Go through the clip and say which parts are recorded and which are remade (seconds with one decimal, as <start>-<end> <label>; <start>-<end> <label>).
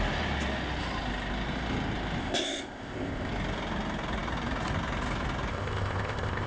0.0-2.2 recorded; 2.2-3.3 remade; 3.3-5.5 recorded; 5.5-6.5 remade